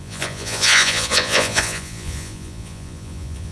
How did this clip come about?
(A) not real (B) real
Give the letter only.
A